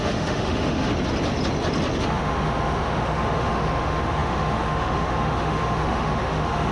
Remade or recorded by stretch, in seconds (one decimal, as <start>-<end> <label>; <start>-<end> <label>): 0.0-0.9 remade; 0.9-2.0 recorded; 2.0-6.7 remade